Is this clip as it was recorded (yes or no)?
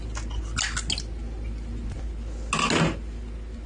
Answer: yes